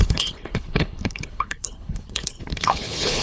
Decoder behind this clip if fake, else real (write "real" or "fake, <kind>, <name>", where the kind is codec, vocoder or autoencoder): fake, codec, HILCodec